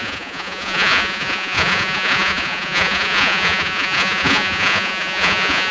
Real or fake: fake